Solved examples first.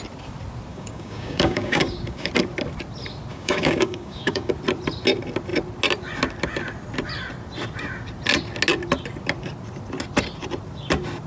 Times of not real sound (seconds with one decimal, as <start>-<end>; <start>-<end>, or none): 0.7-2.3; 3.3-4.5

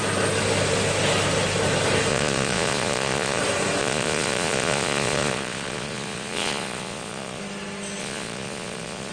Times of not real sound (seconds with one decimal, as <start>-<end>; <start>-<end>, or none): 2.1-3.4; 3.8-7.4; 8.0-9.1

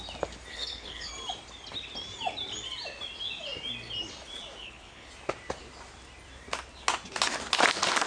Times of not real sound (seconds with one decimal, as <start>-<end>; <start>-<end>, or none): 0.5-1.1; 4.6-5.1

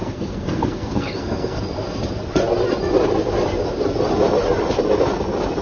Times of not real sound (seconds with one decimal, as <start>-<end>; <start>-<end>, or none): 0.0-1.6

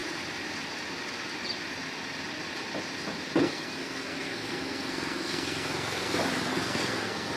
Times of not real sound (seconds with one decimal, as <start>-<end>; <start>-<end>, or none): 3.4-6.1; 6.5-7.4